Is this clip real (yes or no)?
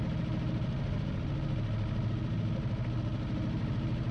yes